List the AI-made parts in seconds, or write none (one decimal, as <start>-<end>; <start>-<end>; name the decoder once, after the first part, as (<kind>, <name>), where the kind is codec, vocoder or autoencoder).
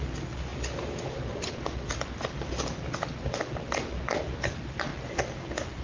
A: none